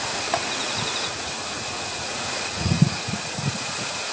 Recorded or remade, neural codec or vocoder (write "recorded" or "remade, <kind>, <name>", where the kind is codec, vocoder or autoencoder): remade, vocoder, Vocos